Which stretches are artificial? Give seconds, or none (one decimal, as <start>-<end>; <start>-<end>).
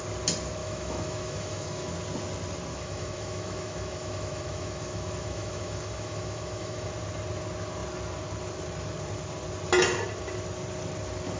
0.6-1.9; 2.7-6.9